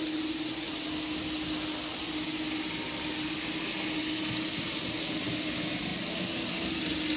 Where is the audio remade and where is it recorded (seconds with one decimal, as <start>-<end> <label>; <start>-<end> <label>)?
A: 0.0-7.2 recorded